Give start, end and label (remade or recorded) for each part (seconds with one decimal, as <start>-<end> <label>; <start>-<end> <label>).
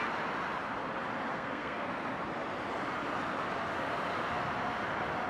0.0-1.3 recorded; 1.3-1.9 remade; 1.9-5.3 recorded